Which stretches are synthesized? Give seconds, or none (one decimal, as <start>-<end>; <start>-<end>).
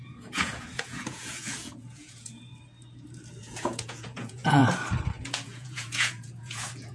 0.0-2.5; 3.4-4.6; 5.2-6.9